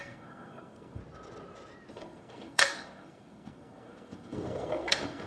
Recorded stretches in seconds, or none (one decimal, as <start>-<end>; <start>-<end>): 1.0-1.9